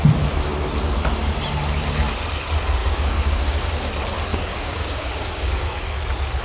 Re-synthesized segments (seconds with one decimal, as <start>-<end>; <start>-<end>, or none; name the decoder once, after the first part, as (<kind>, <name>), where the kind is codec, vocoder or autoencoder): 2.8-3.7 (codec, DAC); 4.3-5.8